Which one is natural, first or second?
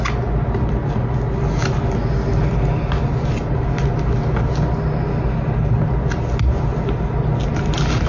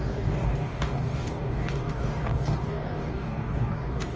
first